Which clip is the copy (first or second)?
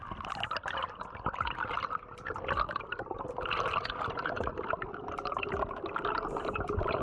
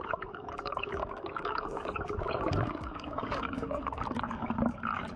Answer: second